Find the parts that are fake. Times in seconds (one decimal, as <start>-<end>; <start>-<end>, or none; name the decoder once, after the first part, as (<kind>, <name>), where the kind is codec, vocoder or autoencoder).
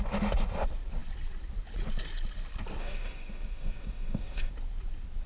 2.8-4.5 (codec, DAC)